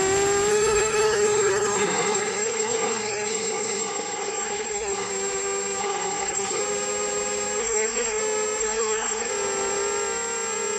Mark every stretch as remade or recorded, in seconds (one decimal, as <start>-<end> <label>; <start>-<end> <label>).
0.0-0.5 recorded; 0.5-5.1 remade; 5.1-5.8 recorded; 5.8-6.6 remade; 6.6-7.6 recorded; 7.6-8.2 remade; 8.2-8.6 recorded; 8.6-9.3 remade; 9.3-10.8 recorded